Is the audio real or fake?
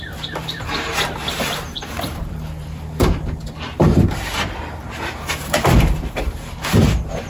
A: fake